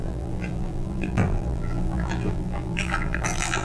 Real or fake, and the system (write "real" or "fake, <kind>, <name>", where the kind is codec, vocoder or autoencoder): fake, vocoder, BigVGAN v2